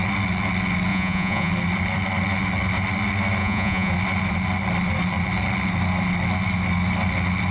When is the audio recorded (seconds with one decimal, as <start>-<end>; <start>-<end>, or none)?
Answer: 0.0-0.9; 1.5-3.4; 3.9-7.5